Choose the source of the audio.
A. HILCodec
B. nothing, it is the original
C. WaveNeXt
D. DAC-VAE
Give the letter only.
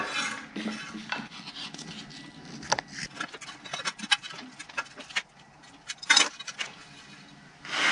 B